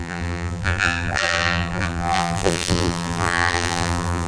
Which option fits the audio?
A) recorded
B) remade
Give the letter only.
B